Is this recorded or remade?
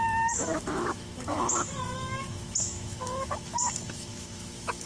remade